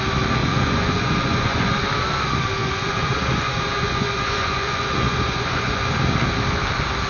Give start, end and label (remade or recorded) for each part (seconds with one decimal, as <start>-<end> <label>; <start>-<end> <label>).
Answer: 0.0-0.4 recorded; 0.4-1.7 remade; 1.7-2.6 recorded; 2.6-6.0 remade; 6.0-7.1 recorded